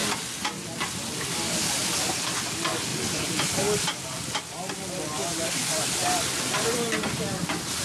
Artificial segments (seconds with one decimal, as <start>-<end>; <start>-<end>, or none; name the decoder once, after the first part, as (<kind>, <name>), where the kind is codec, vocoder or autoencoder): 2.9-4.5 (vocoder, BigVGAN v2); 6.0-7.8